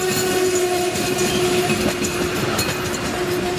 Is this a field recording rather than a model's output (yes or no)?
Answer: yes